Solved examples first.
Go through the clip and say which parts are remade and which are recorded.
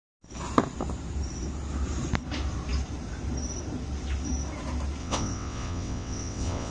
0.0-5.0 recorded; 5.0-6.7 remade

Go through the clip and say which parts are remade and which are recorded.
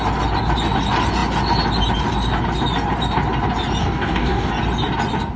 0.0-3.8 recorded; 3.8-4.5 remade; 4.5-5.4 recorded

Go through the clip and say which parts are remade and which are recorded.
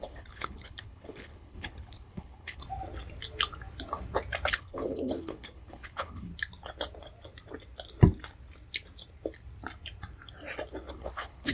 0.0-2.6 remade; 2.6-4.5 recorded; 4.5-6.3 remade; 6.3-10.9 recorded; 10.9-11.5 remade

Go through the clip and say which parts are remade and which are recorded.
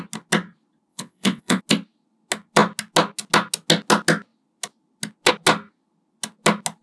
0.0-0.9 recorded; 0.9-1.6 remade; 1.6-6.8 recorded